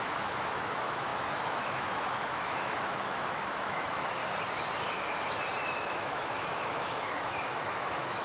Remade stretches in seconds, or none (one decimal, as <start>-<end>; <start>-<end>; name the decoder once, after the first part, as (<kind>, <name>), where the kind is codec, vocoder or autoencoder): 0.0-4.2 (autoencoder, DAC-VAE); 5.7-8.2